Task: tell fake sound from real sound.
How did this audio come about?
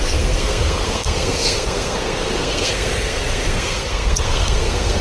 fake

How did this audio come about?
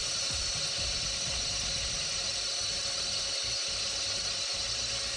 real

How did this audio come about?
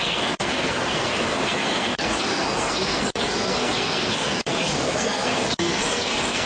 fake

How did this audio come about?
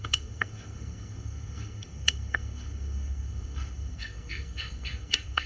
fake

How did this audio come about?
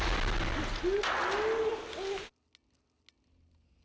real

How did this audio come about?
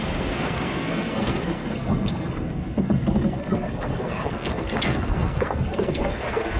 fake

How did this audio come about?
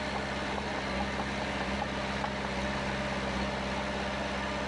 real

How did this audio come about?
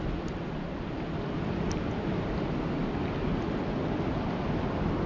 real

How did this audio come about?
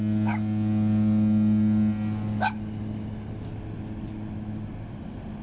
real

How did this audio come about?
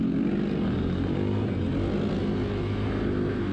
real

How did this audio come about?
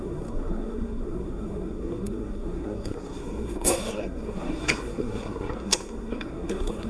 fake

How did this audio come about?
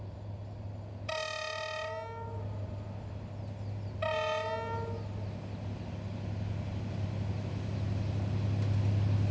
real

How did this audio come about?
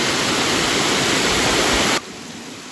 real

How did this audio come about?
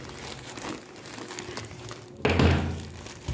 real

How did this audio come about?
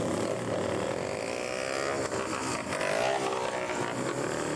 real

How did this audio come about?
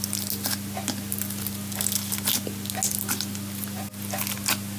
real